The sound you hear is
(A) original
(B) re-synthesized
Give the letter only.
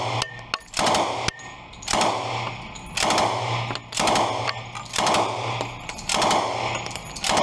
A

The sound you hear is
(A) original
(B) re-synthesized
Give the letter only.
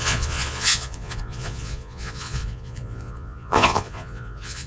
B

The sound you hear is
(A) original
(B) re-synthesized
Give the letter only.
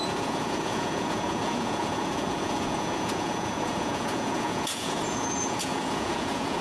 B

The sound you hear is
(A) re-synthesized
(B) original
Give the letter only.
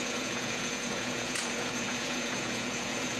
A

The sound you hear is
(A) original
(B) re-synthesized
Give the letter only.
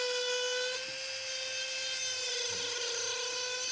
A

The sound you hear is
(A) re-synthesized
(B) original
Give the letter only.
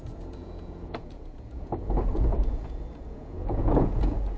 A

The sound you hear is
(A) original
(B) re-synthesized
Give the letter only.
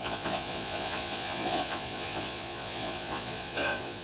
B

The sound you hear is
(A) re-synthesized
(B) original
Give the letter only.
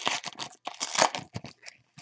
B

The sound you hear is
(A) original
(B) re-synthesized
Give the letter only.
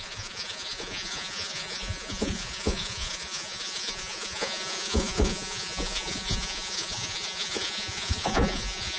B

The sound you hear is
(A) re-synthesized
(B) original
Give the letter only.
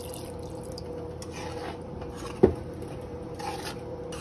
B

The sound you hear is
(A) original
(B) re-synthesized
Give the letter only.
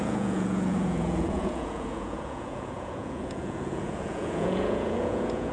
B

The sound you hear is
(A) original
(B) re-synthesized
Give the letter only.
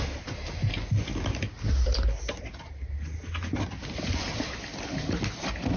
A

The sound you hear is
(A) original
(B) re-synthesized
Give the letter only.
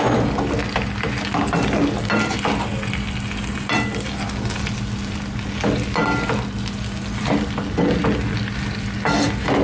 A